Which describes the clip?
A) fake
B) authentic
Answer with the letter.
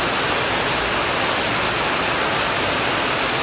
B